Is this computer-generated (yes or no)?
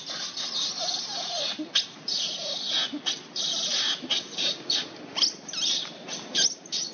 no